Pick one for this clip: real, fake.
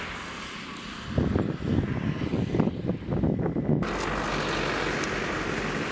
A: real